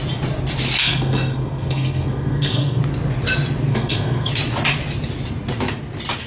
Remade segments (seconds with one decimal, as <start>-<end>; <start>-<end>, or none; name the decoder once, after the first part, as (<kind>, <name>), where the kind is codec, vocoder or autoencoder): 0.8-2.8 (codec, SNAC); 3.7-4.3

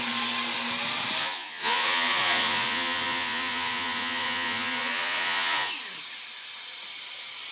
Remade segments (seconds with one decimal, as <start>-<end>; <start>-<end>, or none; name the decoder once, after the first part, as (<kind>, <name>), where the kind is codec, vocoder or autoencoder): 1.2-5.7 (vocoder, Vocos)

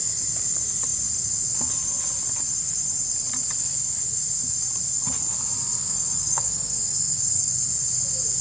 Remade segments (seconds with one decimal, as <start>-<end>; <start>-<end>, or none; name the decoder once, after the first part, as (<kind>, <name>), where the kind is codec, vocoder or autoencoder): 5.8-7.5 (codec, DAC)

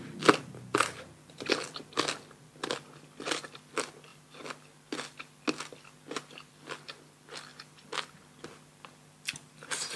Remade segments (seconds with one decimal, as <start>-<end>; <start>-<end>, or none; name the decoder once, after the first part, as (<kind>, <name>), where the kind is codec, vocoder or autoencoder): none

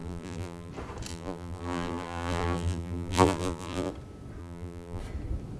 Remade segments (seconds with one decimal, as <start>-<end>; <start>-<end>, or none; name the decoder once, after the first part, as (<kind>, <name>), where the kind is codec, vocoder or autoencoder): 0.0-0.7 (vocoder, BigVGAN v2); 1.1-3.9; 4.4-5.0

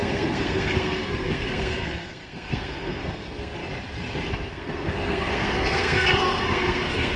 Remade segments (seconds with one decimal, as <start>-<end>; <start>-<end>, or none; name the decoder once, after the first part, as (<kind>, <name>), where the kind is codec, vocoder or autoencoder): 0.0-3.6 (codec, SNAC); 4.3-7.2